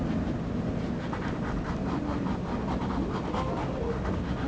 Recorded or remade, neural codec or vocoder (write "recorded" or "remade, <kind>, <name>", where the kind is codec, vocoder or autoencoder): recorded